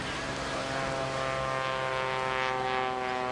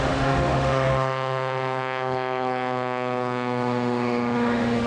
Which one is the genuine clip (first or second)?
first